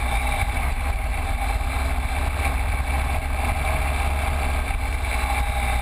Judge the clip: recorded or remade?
recorded